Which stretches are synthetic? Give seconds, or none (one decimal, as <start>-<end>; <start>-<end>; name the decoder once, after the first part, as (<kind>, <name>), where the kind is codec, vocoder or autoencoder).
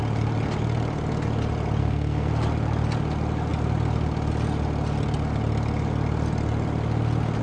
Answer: 1.8-2.3 (codec, SNAC)